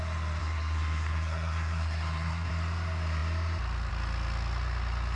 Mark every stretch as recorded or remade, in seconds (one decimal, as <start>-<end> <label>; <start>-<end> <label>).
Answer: 0.0-0.4 recorded; 0.4-2.5 remade; 2.5-5.2 recorded